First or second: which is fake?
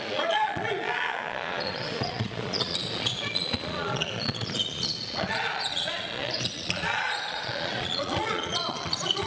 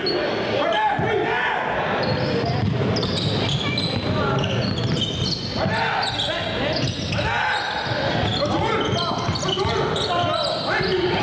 first